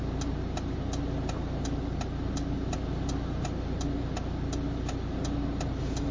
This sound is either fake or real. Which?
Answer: real